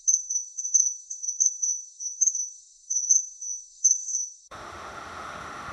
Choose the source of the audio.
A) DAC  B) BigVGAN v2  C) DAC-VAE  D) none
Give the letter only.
C